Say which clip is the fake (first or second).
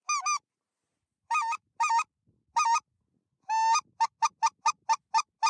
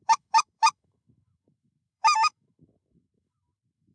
second